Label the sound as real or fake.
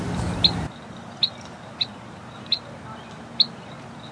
real